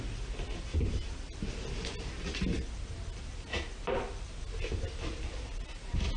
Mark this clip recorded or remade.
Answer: recorded